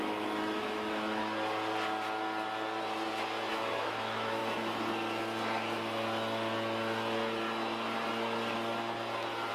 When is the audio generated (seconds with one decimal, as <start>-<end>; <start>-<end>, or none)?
0.0-1.2; 3.5-4.4